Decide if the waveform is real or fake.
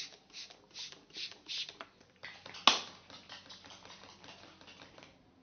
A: real